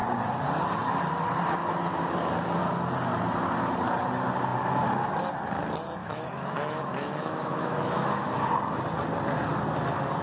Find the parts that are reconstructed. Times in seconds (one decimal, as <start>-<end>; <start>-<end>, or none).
6.0-8.4